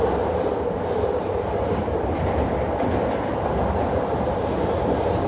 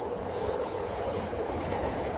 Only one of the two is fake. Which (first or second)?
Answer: second